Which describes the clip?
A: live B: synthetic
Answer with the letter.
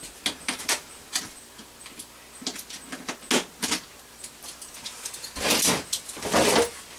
A